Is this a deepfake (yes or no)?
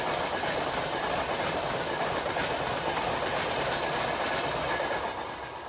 no